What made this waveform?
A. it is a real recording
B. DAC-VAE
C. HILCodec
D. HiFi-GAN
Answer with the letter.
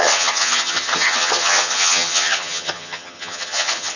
D